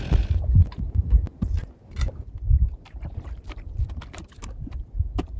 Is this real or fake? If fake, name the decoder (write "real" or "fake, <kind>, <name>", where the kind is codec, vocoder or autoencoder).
real